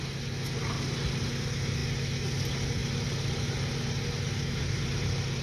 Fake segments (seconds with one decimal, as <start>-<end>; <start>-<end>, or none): none